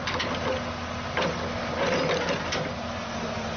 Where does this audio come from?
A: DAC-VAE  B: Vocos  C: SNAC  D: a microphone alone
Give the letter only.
D